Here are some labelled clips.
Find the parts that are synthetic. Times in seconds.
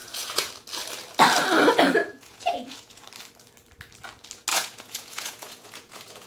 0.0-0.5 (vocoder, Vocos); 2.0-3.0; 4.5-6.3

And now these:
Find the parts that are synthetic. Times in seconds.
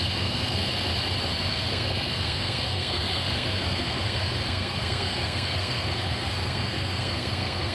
0.0-0.9 (codec, SNAC); 1.5-7.7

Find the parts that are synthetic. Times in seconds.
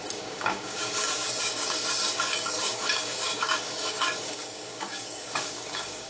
0.0-6.1 (codec, DAC)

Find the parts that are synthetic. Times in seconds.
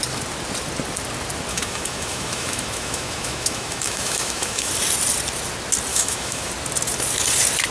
1.5-4.7 (autoencoder, DAC-VAE); 5.9-6.5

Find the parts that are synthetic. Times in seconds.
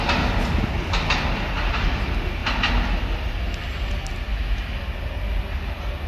4.3-4.8 (autoencoder, DAC-VAE)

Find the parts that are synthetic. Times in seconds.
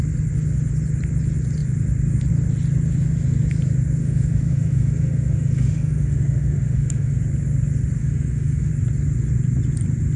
4.0-7.2 (autoencoder, DAC-VAE); 8.0-8.7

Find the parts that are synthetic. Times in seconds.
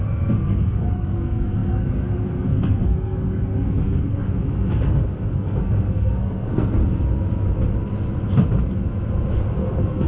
0.0-6.8 (codec, SNAC); 9.5-10.1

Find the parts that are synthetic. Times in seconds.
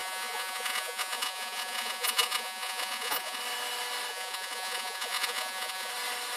0.0-3.4 (vocoder, Vocos); 4.1-5.9